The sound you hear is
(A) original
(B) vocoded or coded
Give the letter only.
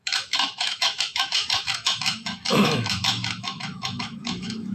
B